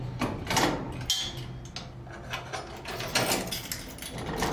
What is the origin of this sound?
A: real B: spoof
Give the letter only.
A